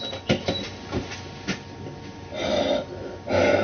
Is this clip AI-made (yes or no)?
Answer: no